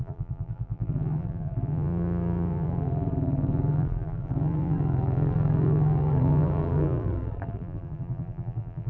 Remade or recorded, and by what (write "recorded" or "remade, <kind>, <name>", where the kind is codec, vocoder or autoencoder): remade, vocoder, BigVGAN v2